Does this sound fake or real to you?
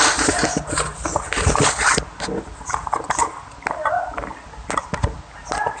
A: real